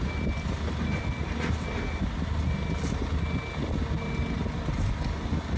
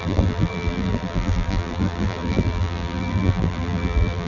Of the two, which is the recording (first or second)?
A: first